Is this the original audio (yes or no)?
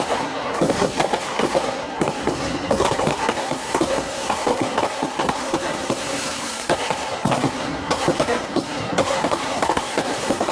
no